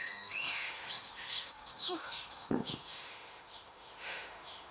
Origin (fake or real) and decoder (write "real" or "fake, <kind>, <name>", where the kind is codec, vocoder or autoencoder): fake, autoencoder, DAC-VAE